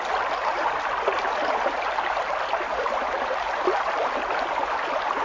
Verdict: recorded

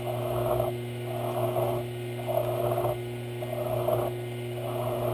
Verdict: recorded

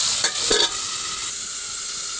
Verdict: recorded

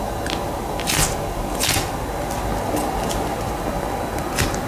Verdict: recorded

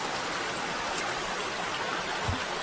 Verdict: recorded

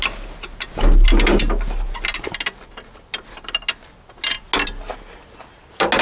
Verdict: recorded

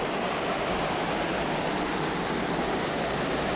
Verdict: recorded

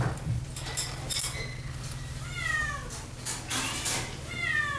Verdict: recorded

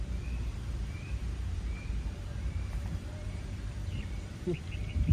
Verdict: remade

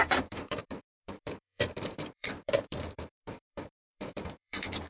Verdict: remade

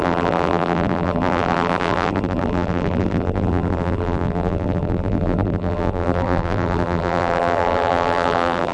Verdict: remade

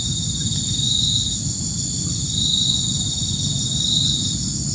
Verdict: recorded